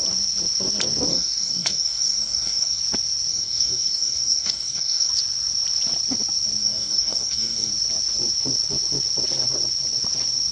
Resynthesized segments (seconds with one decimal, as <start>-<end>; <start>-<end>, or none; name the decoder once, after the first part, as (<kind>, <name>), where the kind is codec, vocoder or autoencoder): 1.1-2.8 (codec, DAC); 3.3-5.1; 6.6-7.7